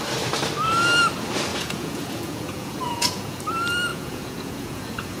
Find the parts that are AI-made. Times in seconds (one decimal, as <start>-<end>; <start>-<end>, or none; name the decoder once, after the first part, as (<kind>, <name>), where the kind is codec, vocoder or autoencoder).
1.5-3.4 (vocoder, Vocos); 3.9-5.2